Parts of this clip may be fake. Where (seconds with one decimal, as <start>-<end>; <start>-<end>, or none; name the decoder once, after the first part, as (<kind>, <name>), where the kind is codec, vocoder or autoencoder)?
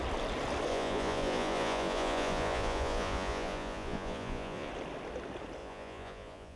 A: 0.7-4.7 (vocoder, Vocos); 5.6-6.6